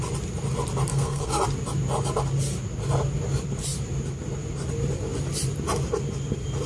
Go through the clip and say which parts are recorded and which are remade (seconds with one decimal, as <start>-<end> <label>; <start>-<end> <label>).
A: 0.0-0.9 recorded; 0.9-1.4 remade; 1.4-6.7 recorded